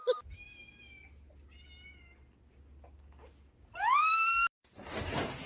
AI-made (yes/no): no